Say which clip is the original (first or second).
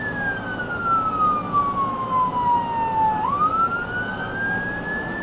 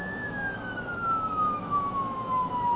first